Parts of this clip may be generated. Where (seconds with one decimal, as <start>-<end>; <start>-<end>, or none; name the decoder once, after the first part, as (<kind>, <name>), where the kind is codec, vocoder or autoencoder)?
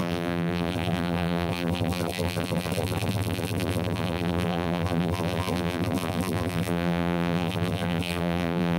0.0-8.8 (vocoder, BigVGAN v2)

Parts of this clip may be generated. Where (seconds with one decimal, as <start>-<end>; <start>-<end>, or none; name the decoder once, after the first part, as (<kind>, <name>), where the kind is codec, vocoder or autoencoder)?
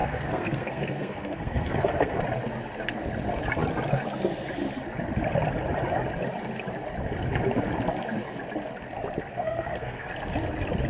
0.0-2.2 (codec, SNAC); 9.3-10.1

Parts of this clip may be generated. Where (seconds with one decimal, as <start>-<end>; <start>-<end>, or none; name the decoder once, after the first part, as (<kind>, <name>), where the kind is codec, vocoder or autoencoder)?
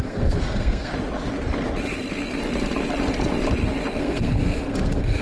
0.0-0.9 (codec, SNAC); 4.0-5.2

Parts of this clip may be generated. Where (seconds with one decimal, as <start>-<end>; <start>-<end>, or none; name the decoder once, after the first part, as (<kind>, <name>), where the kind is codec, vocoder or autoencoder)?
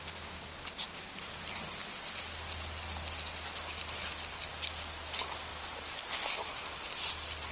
none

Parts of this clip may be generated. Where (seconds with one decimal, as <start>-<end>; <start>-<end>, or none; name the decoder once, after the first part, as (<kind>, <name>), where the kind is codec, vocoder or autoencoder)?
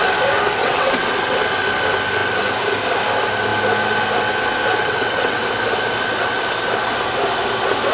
0.6-1.1 (vocoder, WaveNeXt); 4.8-5.4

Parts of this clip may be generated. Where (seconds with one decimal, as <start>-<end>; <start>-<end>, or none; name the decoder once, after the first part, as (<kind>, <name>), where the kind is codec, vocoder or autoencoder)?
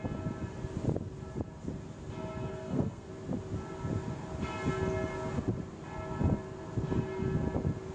2.5-3.1 (codec, SNAC)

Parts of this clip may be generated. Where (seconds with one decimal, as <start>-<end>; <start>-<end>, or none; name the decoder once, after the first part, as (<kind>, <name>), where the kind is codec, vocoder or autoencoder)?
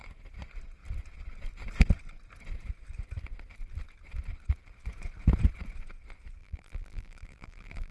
6.4-7.9 (vocoder, BigVGAN v2)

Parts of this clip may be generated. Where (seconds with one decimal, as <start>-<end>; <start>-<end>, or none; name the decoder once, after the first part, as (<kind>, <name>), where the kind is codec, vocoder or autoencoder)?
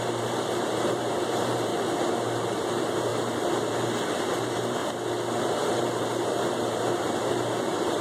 0.0-1.7 (vocoder, BigVGAN v2); 2.7-4.8; 5.4-8.0